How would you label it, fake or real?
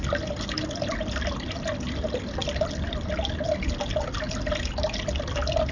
real